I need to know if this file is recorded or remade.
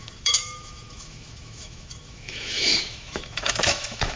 remade